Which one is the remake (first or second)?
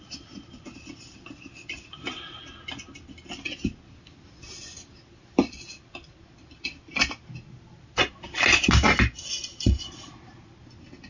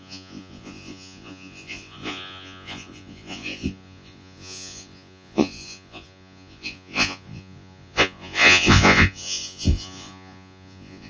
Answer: second